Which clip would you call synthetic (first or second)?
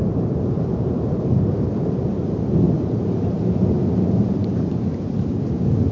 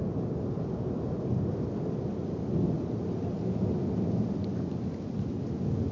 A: first